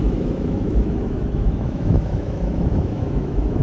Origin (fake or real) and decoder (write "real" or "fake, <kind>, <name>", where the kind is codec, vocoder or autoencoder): fake, autoencoder, DAC-VAE